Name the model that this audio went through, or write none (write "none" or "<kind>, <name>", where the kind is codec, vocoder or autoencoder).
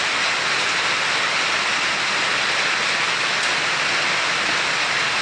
none